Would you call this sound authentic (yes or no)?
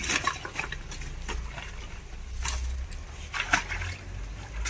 yes